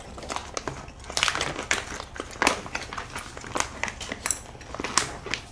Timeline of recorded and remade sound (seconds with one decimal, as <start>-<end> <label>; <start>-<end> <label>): 0.0-5.5 recorded